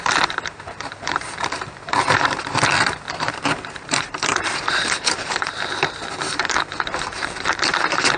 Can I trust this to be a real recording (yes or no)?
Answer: no